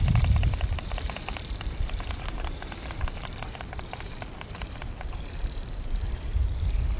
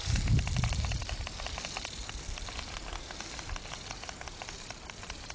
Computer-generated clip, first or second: first